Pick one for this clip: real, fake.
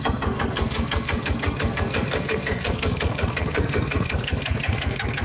fake